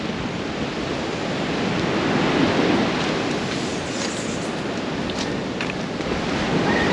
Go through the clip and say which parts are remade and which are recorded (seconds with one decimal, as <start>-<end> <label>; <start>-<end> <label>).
0.0-6.9 recorded